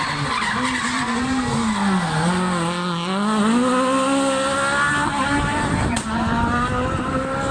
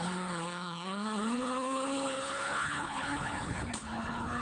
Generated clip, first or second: second